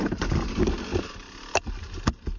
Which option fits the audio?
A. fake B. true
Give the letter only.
B